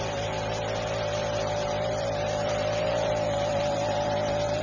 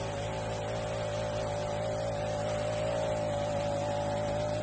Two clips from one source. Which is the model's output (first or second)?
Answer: first